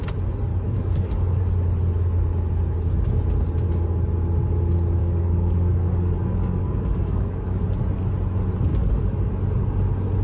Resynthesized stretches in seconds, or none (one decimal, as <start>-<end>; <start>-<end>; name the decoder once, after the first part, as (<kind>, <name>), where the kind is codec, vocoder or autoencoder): 0.5-1.4 (codec, DAC); 5.0-7.6; 8.7-9.3